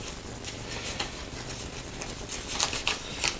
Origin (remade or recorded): recorded